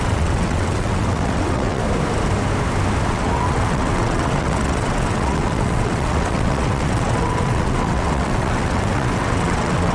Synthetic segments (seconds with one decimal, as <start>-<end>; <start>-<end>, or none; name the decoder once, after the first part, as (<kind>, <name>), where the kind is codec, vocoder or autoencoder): 0.0-1.8 (vocoder, WaveNeXt); 3.1-9.9